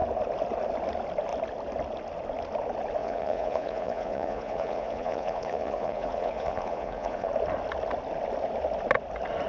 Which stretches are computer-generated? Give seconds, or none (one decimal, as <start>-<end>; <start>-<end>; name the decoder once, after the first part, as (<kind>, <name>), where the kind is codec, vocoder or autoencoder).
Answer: 3.0-7.3 (vocoder, Vocos)